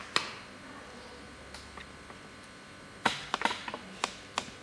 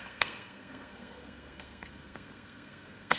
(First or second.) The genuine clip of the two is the first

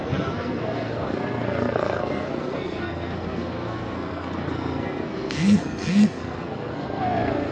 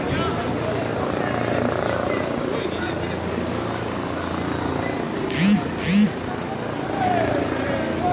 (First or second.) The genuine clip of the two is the second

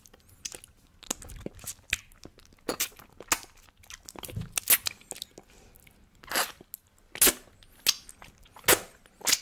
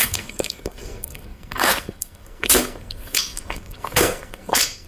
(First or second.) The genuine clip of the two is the first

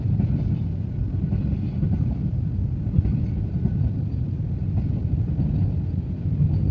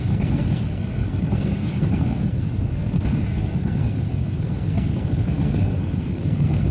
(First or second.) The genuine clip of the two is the first